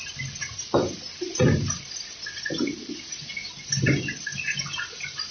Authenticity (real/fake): real